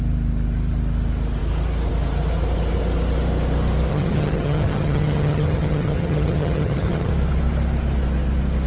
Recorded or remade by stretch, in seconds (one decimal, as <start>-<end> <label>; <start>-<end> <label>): 0.0-3.9 recorded; 3.9-7.1 remade; 7.1-8.7 recorded